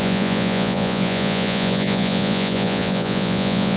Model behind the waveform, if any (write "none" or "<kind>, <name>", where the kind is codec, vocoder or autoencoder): vocoder, Vocos